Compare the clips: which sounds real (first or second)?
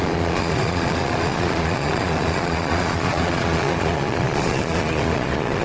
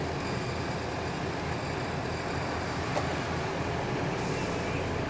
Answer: second